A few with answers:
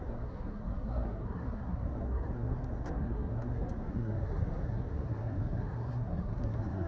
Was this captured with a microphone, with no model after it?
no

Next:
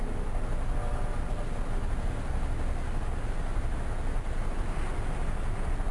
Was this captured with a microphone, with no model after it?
yes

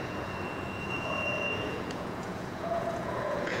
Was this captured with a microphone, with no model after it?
no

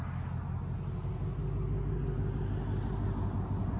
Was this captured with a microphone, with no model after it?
yes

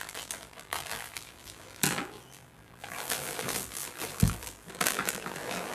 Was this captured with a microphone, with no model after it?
no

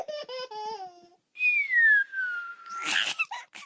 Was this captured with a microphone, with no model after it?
yes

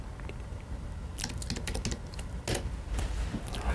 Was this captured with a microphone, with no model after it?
yes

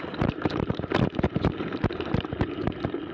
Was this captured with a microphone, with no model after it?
no